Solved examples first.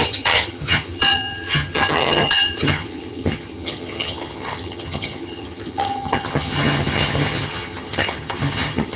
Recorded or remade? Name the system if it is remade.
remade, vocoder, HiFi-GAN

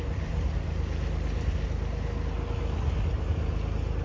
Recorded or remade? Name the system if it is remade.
recorded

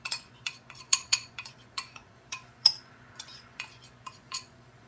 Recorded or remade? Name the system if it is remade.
remade, vocoder, Vocos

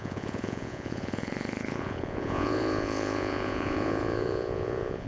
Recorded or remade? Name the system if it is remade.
remade, vocoder, Vocos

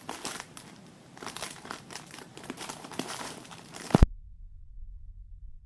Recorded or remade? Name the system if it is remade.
remade, vocoder, BigVGAN v2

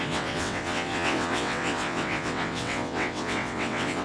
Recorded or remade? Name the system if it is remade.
remade, vocoder, WaveNeXt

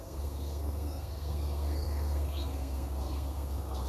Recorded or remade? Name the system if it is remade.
remade, codec, SNAC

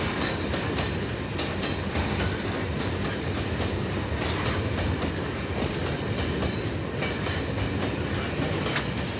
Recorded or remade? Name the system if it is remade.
recorded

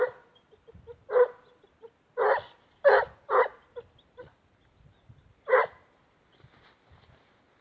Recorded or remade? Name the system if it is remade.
recorded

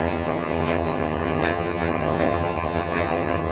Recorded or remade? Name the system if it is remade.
remade, vocoder, HiFi-GAN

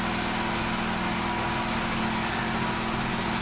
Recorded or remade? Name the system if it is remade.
recorded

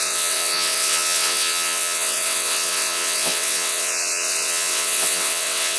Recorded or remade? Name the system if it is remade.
remade, vocoder, WaveNeXt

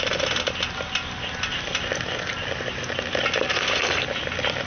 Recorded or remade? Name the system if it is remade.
recorded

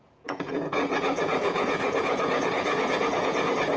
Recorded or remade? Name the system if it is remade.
remade, vocoder, Vocos